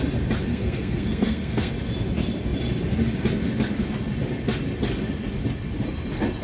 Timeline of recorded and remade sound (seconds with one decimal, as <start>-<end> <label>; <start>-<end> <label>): 0.0-0.5 recorded; 0.5-1.7 remade; 1.7-6.4 recorded